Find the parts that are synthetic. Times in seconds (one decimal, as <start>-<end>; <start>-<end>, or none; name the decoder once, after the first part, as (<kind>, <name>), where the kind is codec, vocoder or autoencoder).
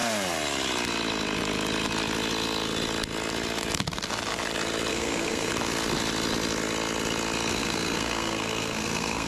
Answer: 4.9-5.5 (codec, SNAC); 7.5-9.3